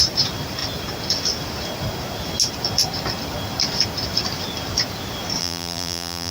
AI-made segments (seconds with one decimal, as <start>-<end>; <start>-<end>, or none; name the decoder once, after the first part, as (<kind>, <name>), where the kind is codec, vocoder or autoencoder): 5.4-6.3 (vocoder, BigVGAN v2)